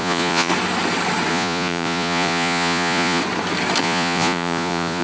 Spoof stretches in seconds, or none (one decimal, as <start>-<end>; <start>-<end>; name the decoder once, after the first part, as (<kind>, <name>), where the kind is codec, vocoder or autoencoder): 0.0-0.5 (vocoder, Vocos); 1.3-3.2; 3.8-5.0